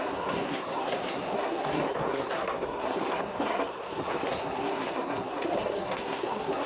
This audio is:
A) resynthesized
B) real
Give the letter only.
A